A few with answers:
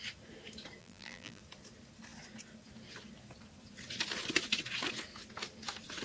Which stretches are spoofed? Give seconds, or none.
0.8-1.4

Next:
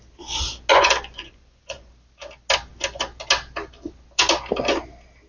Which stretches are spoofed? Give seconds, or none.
0.7-1.9

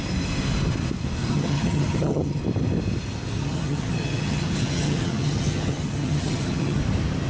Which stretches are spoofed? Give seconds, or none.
1.2-2.4; 3.4-6.8

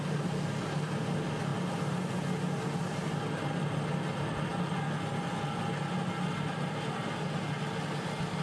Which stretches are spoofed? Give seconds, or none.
none

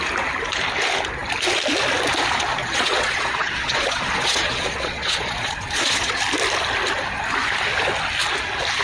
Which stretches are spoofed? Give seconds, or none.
2.6-6.2

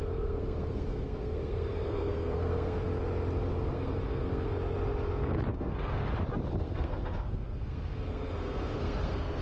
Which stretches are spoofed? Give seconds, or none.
0.0-2.8; 3.7-4.5; 5.5-6.0; 6.6-9.4

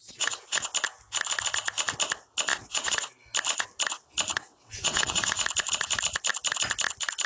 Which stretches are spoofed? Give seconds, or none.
0.0-0.7; 2.5-3.1; 4.3-5.4